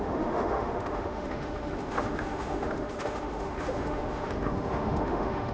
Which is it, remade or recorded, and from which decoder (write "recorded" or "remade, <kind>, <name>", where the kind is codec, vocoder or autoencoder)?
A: remade, autoencoder, DAC-VAE